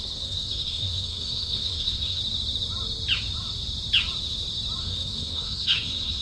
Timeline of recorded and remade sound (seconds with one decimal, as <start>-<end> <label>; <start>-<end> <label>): 0.0-2.2 remade; 2.2-4.8 recorded; 4.8-6.2 remade